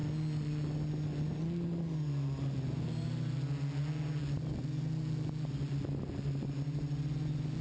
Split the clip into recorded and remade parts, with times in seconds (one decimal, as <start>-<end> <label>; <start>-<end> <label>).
0.0-7.6 recorded